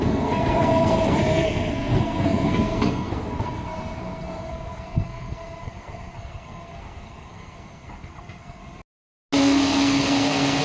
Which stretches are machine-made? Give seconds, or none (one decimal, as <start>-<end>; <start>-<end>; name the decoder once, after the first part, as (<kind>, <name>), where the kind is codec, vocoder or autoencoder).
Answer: 0.0-8.6 (codec, SNAC); 9.4-10.6